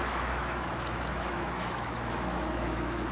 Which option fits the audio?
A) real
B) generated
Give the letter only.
B